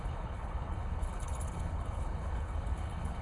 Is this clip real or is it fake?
fake